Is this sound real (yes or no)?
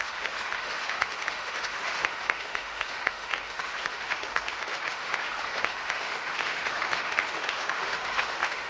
no